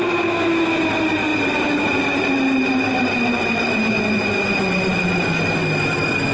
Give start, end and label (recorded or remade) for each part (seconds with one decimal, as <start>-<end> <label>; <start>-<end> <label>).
0.0-1.3 recorded; 1.3-3.9 remade; 3.9-6.3 recorded